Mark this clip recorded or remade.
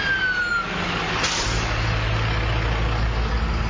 recorded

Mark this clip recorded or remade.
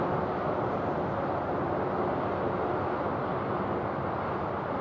recorded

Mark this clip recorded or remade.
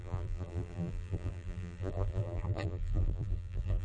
remade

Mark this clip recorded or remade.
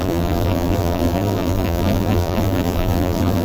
remade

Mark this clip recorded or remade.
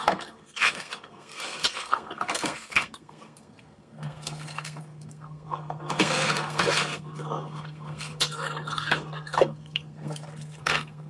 remade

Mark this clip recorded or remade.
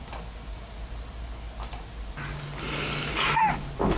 recorded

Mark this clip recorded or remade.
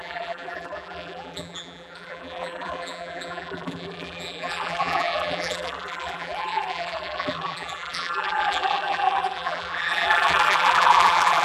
remade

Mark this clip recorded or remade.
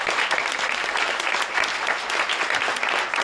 remade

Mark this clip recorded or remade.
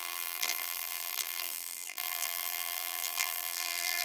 remade